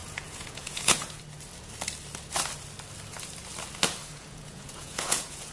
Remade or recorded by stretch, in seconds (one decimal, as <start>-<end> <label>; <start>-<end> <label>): 0.0-1.2 remade; 1.2-4.0 recorded; 4.0-5.5 remade